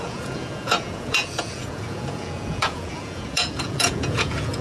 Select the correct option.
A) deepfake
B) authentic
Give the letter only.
A